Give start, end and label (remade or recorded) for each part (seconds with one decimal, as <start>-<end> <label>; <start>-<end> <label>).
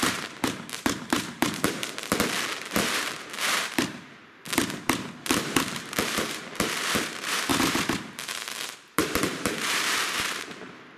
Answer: 0.0-1.8 remade; 1.8-2.5 recorded; 2.5-4.2 remade; 4.2-5.4 recorded; 5.4-11.0 remade